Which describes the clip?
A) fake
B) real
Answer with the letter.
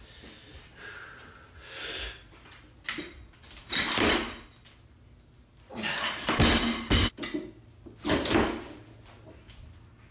B